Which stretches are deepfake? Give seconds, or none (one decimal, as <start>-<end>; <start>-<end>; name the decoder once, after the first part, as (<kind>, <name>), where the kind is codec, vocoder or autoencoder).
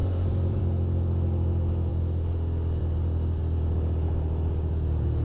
0.0-0.6 (vocoder, BigVGAN v2)